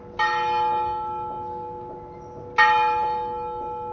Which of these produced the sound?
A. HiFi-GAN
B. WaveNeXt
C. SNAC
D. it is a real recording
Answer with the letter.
D